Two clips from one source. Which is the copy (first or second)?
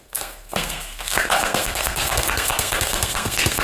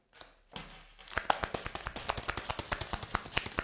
first